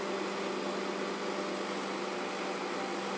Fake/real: real